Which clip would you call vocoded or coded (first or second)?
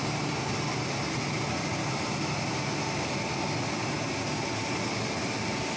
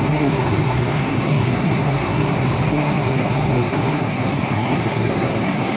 second